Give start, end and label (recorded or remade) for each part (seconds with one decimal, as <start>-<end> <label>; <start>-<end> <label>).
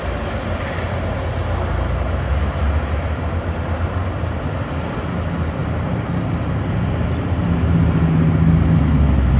0.0-9.4 recorded